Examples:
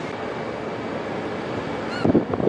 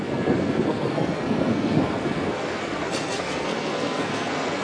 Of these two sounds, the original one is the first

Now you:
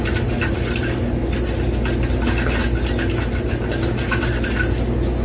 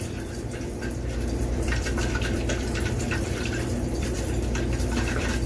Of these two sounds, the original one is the first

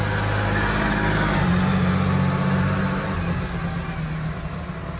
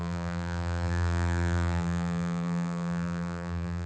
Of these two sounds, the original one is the first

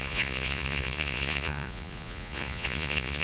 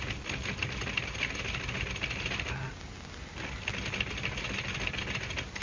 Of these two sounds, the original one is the second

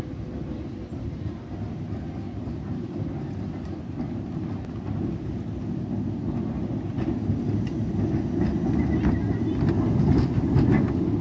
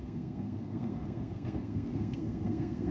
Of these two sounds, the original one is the first